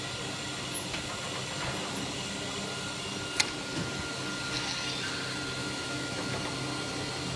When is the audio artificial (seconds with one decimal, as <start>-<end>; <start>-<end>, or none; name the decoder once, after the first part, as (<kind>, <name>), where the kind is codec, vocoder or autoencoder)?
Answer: 5.6-6.4 (autoencoder, DAC-VAE)